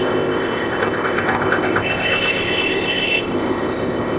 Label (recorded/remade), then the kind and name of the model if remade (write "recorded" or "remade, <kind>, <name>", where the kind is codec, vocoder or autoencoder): remade, codec, ZipCodec